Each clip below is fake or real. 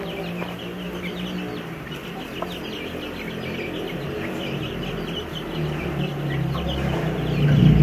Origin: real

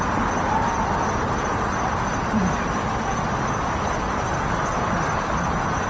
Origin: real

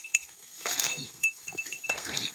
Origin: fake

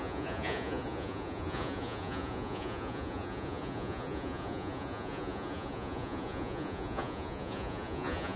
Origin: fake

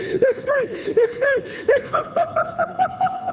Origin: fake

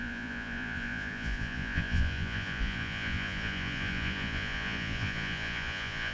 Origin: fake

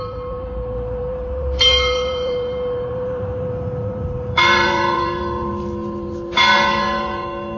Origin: fake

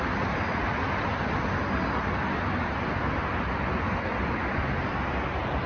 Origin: real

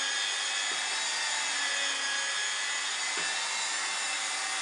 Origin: real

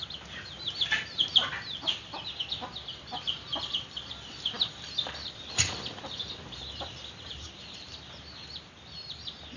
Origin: real